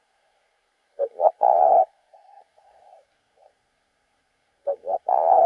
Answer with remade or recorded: remade